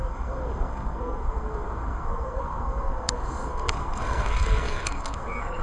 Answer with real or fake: fake